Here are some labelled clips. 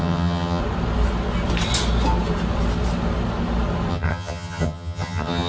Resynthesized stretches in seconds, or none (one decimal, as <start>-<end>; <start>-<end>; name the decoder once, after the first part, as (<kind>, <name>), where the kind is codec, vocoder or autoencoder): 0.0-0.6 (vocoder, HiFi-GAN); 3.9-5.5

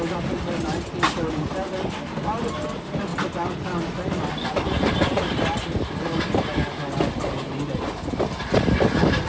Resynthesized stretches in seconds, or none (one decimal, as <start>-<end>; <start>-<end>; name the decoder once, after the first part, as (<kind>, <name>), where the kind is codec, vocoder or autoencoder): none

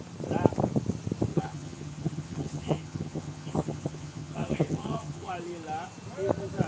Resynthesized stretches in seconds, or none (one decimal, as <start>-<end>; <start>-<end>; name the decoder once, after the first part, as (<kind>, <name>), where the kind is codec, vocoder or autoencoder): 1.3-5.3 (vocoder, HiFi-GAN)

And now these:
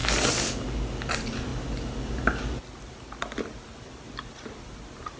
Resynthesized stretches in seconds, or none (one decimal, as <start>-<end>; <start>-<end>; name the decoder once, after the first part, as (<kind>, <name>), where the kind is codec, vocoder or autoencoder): none